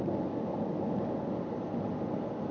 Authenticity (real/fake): real